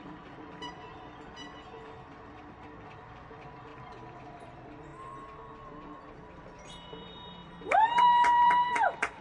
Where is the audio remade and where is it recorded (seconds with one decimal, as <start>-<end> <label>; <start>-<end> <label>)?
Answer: 0.0-4.9 remade; 4.9-6.1 recorded; 6.1-9.2 remade